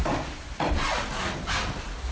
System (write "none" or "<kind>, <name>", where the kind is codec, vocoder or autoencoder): none